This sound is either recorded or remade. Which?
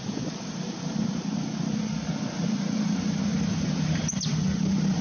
remade